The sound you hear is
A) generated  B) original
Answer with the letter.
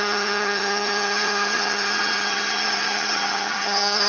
A